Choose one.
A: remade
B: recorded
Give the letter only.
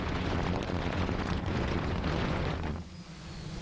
A